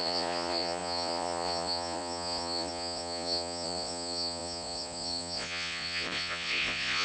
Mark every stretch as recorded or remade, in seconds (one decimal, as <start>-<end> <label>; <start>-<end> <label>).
0.0-7.0 remade